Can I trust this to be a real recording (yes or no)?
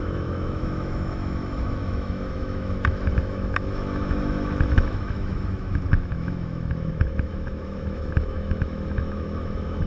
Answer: no